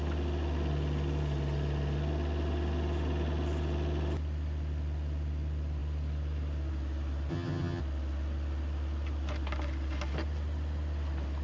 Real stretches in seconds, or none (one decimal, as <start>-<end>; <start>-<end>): 0.0-7.3; 7.8-11.4